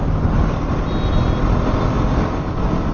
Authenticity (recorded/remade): recorded